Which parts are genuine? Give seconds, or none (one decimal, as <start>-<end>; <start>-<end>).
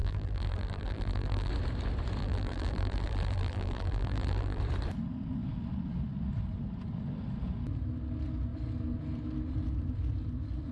1.5-2.2; 4.6-10.7